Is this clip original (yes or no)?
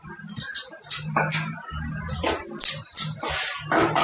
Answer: yes